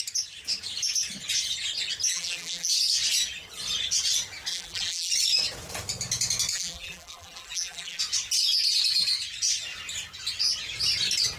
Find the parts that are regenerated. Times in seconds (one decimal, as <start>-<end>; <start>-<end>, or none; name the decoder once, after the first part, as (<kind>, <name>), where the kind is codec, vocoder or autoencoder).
2.1-2.7 (vocoder, BigVGAN v2); 4.5-5.1; 6.5-8.0